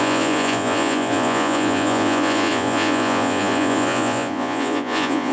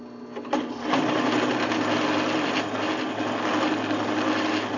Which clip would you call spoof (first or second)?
first